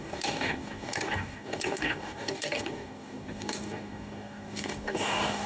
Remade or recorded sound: remade